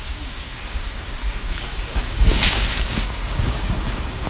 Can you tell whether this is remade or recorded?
remade